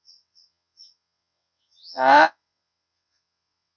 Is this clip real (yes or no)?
no